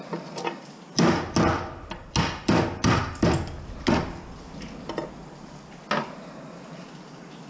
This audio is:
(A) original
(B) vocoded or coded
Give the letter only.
A